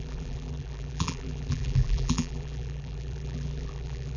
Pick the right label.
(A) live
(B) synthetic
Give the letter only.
B